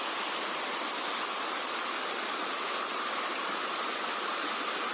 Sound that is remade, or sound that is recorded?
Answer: recorded